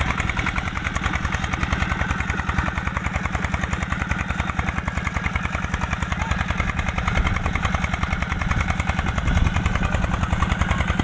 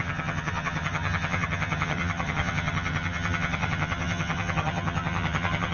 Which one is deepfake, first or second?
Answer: second